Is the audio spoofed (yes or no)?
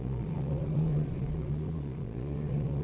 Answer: yes